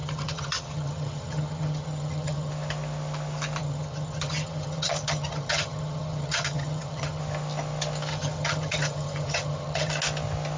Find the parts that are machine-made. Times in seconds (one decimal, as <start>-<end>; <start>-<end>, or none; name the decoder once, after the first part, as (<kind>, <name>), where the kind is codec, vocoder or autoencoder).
0.0-2.5 (vocoder, HiFi-GAN); 3.6-7.2; 8.1-9.9